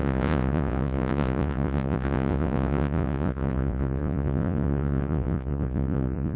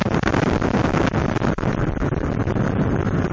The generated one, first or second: first